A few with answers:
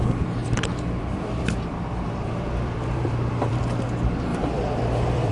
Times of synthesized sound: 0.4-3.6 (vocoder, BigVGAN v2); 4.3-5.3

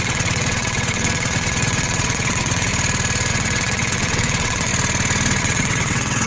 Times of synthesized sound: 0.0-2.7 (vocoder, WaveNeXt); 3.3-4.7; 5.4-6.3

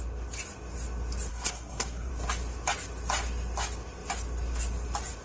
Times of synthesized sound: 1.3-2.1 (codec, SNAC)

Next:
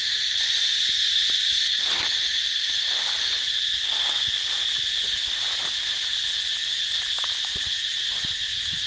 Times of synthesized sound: 6.6-7.1 (vocoder, BigVGAN v2)